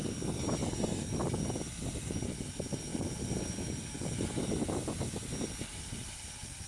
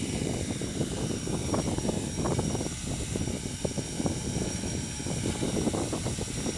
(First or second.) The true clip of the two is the first